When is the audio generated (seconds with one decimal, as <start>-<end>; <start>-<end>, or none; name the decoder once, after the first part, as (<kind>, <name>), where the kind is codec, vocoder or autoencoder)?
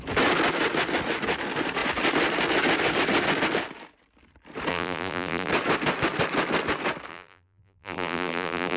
4.7-5.5 (vocoder, BigVGAN v2); 7.1-8.8